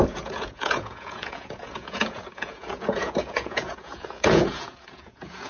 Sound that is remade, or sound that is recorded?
remade